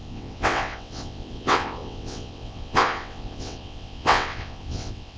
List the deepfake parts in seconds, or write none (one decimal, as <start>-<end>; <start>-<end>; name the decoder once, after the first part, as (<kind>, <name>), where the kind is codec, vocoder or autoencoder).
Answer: 0.0-5.2 (vocoder, WaveNeXt)